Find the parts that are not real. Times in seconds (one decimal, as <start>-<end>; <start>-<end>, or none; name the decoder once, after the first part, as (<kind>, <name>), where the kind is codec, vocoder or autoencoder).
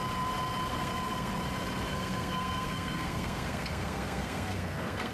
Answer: 0.7-1.3 (codec, SNAC); 1.9-5.1